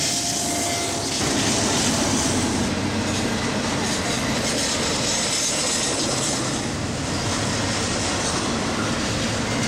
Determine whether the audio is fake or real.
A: real